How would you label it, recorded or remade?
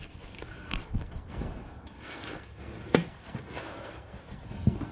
remade